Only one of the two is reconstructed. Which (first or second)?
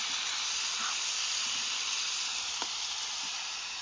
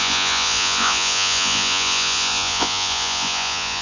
second